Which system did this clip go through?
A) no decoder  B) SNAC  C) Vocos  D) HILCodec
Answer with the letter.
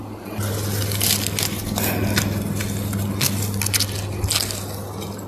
A